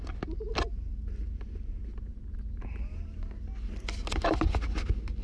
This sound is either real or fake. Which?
real